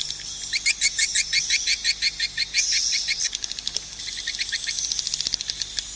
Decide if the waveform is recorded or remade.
recorded